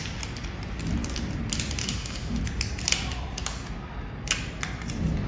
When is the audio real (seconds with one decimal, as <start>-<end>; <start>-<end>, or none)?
0.0-1.8; 2.4-5.3